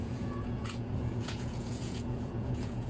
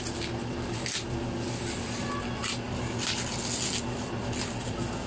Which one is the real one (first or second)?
second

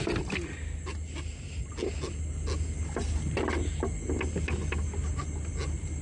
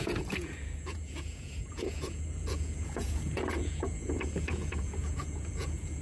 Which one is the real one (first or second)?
first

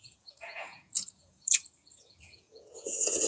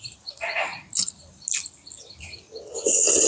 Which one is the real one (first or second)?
second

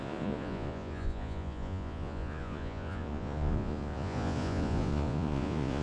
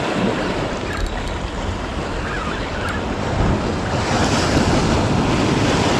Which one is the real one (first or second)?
second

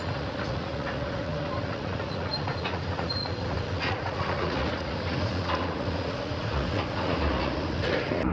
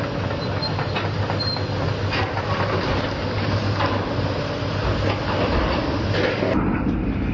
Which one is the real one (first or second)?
second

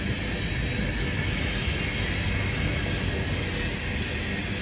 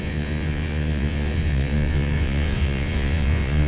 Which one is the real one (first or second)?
first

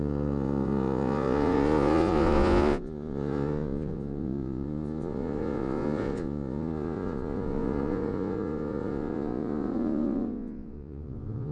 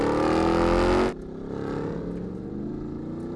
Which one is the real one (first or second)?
second